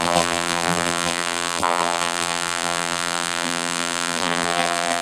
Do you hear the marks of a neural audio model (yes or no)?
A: yes